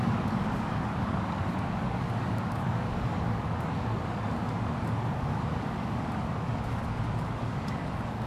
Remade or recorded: remade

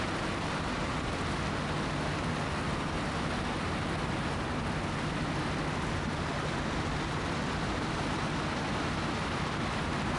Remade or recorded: recorded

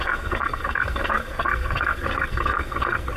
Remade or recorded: remade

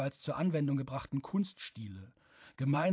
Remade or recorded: remade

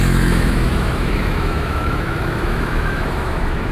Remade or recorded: remade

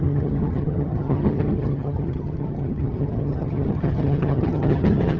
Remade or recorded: remade